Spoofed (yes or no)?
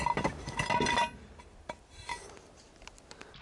no